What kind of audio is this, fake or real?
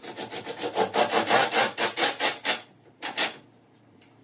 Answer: real